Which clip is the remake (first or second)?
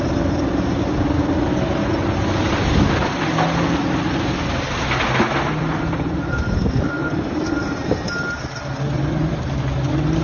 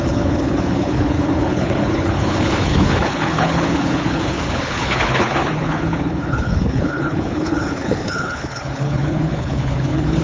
second